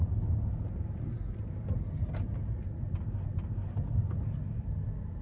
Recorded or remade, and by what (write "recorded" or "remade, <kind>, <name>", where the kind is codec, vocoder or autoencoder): recorded